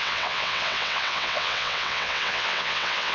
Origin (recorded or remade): remade